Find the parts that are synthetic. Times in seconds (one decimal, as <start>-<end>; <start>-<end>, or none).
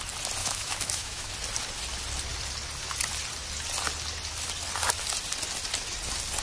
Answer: 0.4-1.3